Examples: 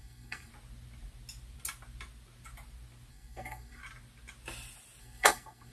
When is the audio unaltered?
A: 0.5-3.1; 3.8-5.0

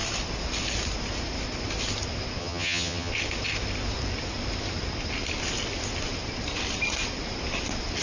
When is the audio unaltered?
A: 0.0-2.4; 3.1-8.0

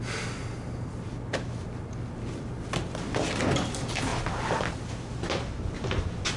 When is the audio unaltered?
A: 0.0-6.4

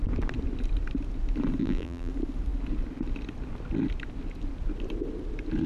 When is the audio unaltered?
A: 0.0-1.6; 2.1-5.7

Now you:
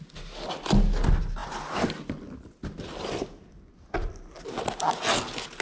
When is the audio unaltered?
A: 0.0-5.6

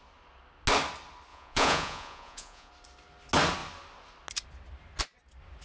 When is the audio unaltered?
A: 0.0-1.3; 2.7-5.6

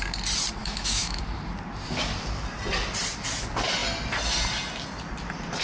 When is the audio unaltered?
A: 0.0-0.6; 1.2-5.6

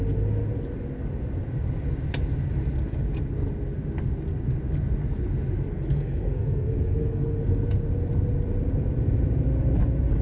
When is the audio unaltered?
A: 0.0-5.7; 7.4-10.2